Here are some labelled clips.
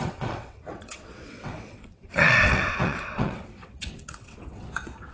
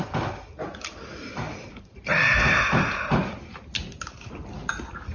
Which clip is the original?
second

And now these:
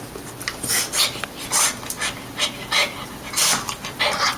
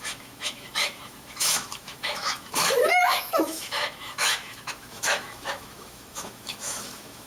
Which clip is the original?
first